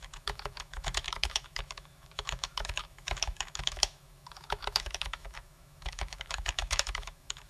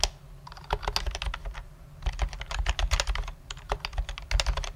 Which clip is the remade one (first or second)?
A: first